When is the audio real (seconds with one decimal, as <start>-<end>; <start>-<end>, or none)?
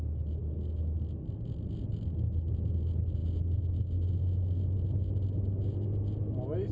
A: 0.0-6.7